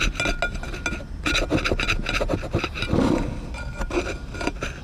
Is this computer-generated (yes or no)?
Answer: no